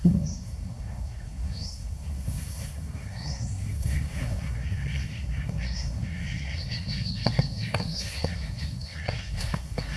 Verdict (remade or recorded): remade